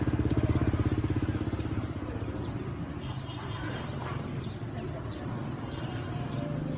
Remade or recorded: recorded